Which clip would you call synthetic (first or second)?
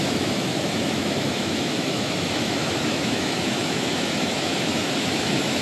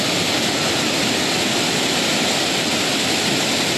first